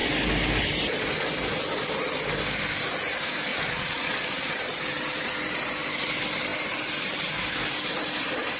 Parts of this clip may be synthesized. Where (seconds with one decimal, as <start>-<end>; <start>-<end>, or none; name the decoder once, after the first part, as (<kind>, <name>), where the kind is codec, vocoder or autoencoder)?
3.5-4.5 (vocoder, Vocos)